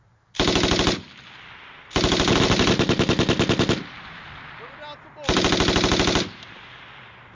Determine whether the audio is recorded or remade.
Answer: recorded